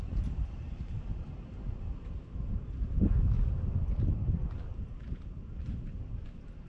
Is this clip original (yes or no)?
yes